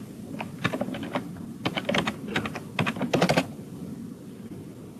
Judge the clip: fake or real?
real